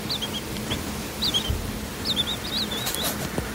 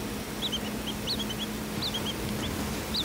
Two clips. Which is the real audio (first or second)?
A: second